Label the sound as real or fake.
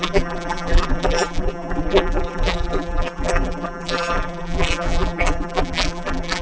fake